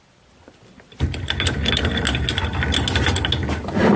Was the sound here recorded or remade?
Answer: recorded